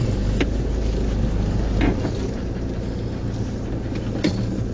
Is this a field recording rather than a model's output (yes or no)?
yes